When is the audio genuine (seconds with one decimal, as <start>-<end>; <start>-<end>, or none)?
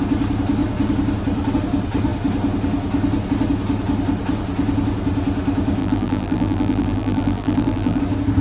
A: 0.0-5.8; 8.0-8.4